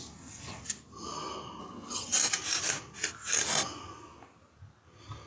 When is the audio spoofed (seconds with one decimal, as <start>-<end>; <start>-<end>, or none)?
1.6-2.2

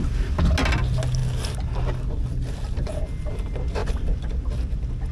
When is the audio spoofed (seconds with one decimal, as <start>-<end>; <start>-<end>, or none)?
none